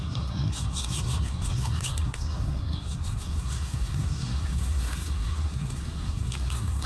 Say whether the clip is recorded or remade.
remade